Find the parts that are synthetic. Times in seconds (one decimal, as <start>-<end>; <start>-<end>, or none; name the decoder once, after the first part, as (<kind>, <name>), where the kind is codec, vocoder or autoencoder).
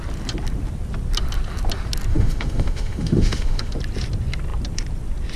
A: 2.1-3.7 (autoencoder, DAC-VAE)